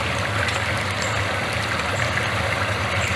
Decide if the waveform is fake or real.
real